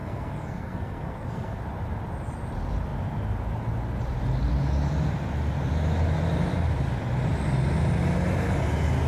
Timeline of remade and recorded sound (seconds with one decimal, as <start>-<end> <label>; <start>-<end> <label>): 0.0-1.6 remade; 1.6-9.1 recorded